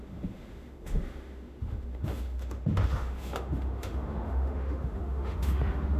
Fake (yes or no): yes